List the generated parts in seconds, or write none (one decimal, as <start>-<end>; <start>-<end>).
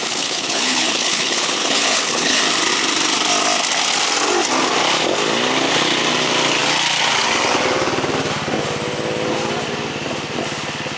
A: 0.0-2.4